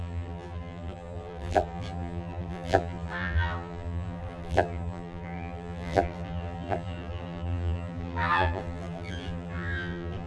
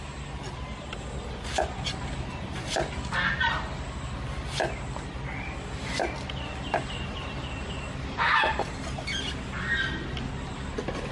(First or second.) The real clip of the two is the second